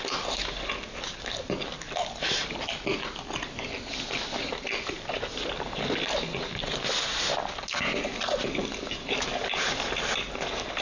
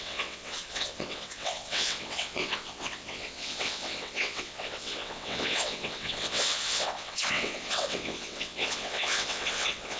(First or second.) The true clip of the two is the first